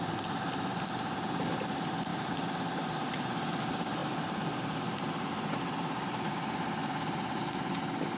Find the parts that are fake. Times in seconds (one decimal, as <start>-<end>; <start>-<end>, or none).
none

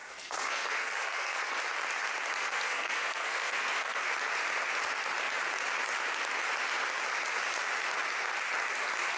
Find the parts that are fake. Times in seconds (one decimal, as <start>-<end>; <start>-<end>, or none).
0.0-1.6; 2.4-4.0

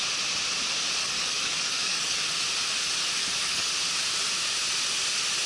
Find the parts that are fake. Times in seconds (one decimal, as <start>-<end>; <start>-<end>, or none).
1.0-2.2; 3.2-3.7

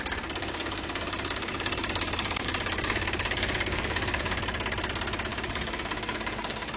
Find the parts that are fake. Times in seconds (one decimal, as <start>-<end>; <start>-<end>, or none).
0.4-4.4; 5.3-6.8